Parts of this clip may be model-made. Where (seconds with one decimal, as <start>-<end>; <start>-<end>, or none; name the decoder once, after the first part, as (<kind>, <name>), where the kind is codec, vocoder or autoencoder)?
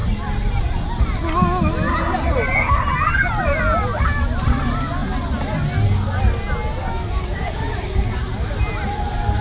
6.8-8.2 (codec, DAC)